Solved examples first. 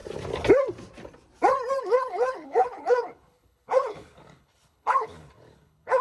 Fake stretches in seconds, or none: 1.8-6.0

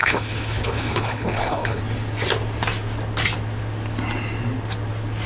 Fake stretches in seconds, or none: 0.0-1.8